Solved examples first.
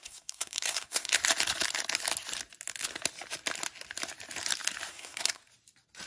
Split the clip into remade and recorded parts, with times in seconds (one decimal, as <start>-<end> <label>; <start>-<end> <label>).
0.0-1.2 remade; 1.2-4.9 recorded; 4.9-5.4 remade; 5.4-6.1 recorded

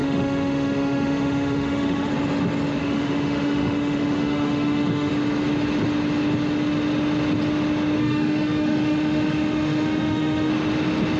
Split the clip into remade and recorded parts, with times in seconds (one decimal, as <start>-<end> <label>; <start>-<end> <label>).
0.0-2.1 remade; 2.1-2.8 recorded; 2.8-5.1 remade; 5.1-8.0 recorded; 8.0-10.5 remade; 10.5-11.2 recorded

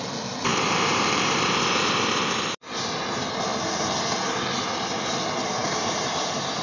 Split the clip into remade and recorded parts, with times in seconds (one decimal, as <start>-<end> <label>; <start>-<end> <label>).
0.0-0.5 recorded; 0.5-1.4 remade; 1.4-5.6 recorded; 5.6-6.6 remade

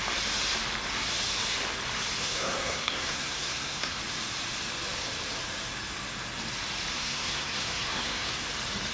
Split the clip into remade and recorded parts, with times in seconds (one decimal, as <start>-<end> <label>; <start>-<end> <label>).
0.0-2.2 recorded; 2.2-4.0 remade; 4.0-6.9 recorded; 6.9-8.5 remade; 8.5-8.9 recorded

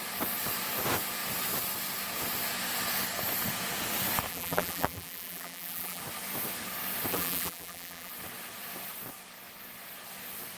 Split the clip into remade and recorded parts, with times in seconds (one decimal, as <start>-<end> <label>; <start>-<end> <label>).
0.0-4.3 recorded; 4.3-6.0 remade; 6.0-7.1 recorded; 7.1-8.1 remade; 8.1-10.6 recorded

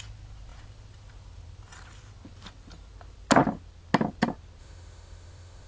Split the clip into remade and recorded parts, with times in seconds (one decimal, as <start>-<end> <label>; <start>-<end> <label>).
0.0-4.6 recorded; 4.6-5.7 remade

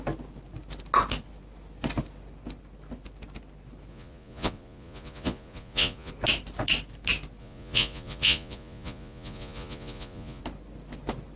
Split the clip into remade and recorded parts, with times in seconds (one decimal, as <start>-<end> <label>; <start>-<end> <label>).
0.0-3.9 recorded; 3.9-6.1 remade; 6.1-7.4 recorded; 7.4-10.4 remade; 10.4-11.4 recorded